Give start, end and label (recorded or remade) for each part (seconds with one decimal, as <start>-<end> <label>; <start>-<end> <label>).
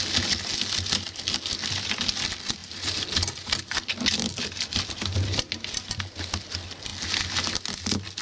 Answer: 0.0-8.2 recorded